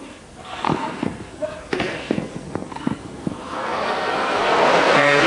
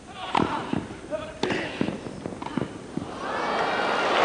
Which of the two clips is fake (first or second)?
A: first